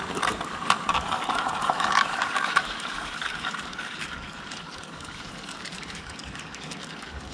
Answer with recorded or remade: remade